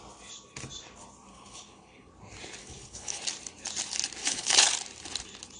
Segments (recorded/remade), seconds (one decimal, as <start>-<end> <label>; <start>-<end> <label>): 0.0-1.3 recorded; 1.3-2.1 remade; 2.1-2.6 recorded; 2.6-3.2 remade; 3.2-4.2 recorded; 4.2-4.7 remade; 4.7-5.6 recorded